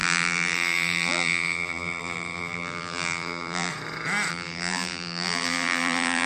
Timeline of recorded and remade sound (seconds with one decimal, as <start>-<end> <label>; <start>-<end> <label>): 0.0-3.7 remade; 3.7-4.3 recorded; 4.3-6.3 remade